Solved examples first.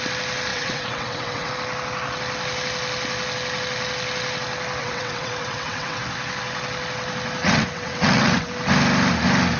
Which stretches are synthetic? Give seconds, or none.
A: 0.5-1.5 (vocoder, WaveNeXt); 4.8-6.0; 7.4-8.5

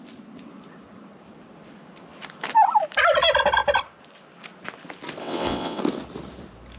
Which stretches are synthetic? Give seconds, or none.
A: 5.2-5.8 (vocoder, WaveNeXt)

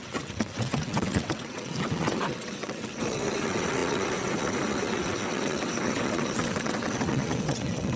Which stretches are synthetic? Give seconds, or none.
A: 0.0-8.0 (vocoder, WaveNeXt)

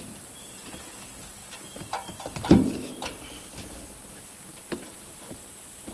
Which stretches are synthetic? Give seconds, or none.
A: none

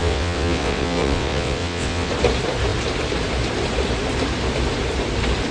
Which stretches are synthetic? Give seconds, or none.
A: 0.0-2.1 (vocoder, WaveNeXt)

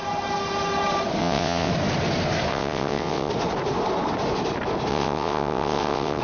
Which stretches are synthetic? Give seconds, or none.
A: 1.2-1.7 (vocoder, WaveNeXt); 2.5-3.3; 4.9-6.2